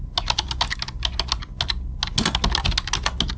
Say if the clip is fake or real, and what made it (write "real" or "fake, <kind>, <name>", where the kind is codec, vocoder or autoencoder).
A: real